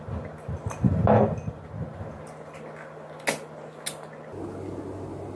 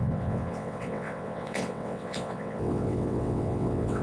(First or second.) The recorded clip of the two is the first